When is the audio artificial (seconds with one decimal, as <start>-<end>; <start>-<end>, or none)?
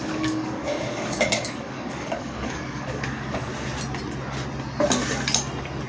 0.0-3.5